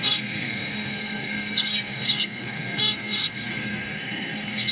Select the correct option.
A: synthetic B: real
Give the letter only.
A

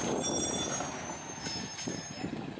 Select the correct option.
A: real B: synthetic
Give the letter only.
A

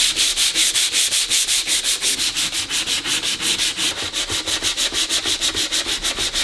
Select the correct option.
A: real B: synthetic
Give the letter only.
A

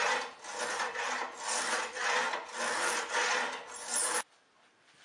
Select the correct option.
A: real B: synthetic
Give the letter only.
A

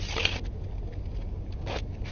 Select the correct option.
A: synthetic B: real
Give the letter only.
B